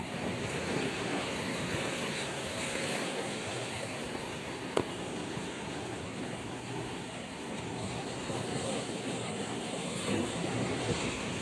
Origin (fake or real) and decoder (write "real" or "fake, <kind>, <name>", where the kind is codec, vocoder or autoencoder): fake, codec, SNAC